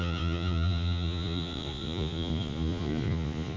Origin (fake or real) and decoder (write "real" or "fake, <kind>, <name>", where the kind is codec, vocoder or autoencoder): fake, vocoder, Vocos